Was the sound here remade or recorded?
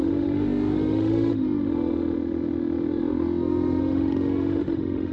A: remade